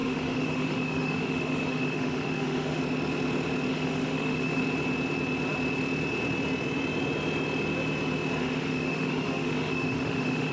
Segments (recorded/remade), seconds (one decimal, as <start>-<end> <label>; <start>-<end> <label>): 0.0-2.8 remade; 2.8-3.7 recorded; 3.7-4.6 remade; 4.6-8.4 recorded; 8.4-10.5 remade